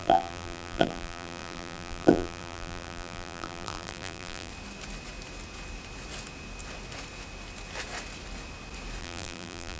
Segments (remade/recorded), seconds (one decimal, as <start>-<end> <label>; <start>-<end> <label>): 0.0-4.5 remade; 4.5-9.0 recorded; 9.0-9.8 remade